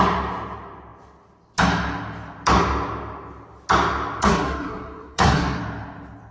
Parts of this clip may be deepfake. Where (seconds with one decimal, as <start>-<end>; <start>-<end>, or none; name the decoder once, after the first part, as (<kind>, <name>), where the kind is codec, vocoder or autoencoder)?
4.2-5.6 (codec, SNAC)